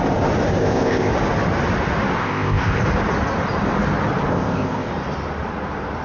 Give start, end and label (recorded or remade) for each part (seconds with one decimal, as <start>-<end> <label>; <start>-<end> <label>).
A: 0.0-0.6 recorded; 0.6-1.1 remade; 1.1-2.2 recorded; 2.2-2.8 remade; 2.8-4.3 recorded; 4.3-4.9 remade; 4.9-6.0 recorded